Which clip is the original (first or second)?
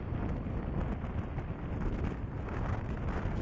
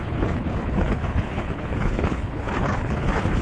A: first